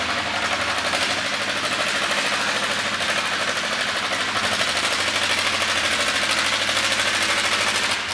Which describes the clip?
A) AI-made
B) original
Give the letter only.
B